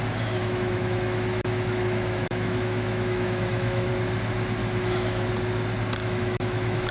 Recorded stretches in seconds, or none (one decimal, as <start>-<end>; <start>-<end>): 0.0-0.4; 3.9-4.6; 5.3-6.0